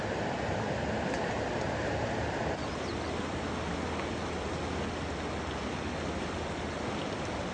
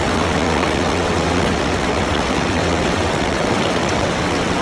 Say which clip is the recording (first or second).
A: first